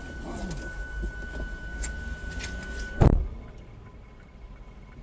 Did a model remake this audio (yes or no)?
no